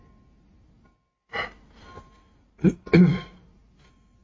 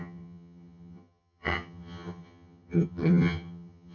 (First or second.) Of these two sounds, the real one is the first